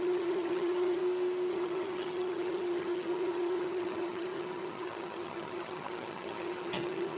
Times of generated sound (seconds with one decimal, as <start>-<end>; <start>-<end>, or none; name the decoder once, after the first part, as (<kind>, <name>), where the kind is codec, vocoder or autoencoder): 0.0-1.0 (vocoder, HiFi-GAN); 1.5-7.2